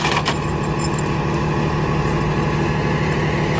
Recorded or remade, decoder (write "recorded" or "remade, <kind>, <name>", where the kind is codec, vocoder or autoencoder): recorded